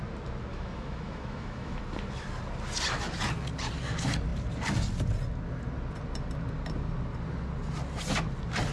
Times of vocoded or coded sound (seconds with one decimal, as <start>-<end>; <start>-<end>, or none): 0.5-1.8